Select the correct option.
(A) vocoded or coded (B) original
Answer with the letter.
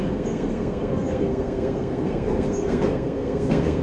A